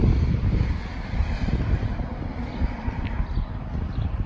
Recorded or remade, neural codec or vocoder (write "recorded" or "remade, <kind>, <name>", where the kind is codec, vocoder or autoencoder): remade, vocoder, BigVGAN v2